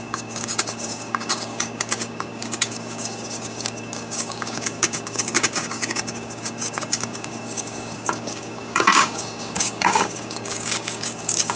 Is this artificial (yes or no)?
yes